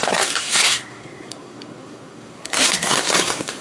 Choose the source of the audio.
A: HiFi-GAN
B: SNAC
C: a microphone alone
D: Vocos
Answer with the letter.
B